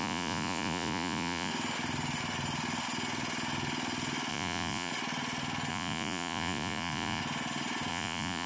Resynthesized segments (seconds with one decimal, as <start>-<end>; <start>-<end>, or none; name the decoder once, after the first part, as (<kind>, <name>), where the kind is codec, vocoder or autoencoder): 0.0-1.5 (vocoder, Vocos); 4.3-4.9; 5.7-7.2; 7.9-8.5